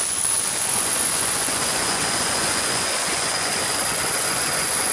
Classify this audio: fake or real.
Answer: fake